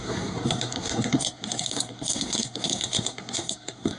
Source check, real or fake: fake